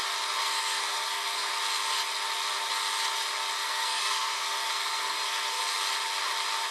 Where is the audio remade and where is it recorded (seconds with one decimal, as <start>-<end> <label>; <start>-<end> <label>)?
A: 0.0-0.4 recorded; 0.4-1.5 remade; 1.5-3.6 recorded; 3.6-5.6 remade; 5.6-6.7 recorded